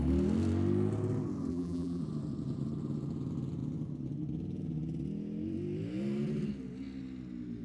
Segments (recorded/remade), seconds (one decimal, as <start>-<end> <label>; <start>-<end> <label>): 0.0-1.5 recorded; 1.5-2.0 remade; 2.0-7.6 recorded